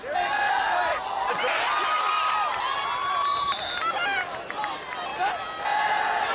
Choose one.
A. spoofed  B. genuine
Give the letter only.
B